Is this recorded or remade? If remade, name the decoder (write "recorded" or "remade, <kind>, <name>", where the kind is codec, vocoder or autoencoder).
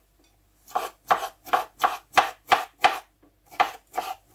recorded